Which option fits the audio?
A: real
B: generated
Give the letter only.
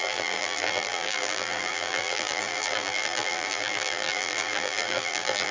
B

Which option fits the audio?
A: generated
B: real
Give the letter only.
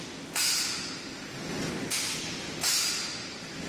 B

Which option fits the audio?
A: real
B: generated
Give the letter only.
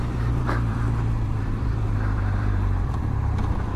B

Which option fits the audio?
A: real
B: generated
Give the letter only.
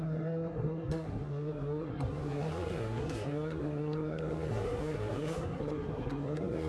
B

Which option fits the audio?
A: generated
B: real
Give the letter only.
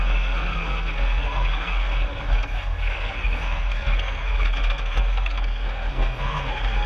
A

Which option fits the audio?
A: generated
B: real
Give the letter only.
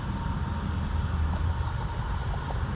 B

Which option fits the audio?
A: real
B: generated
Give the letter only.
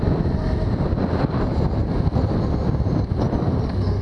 A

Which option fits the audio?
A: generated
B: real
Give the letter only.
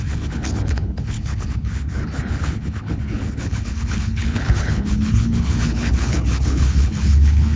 A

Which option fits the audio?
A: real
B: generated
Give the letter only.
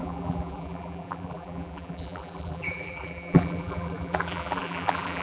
B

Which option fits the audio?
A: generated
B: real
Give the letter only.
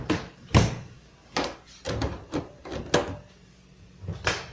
B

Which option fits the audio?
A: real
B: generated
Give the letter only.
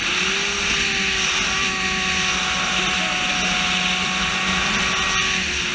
A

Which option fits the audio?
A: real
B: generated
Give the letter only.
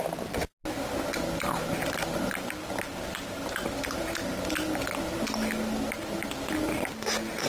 A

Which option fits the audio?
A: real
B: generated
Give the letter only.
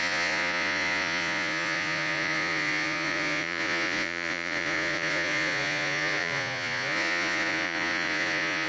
B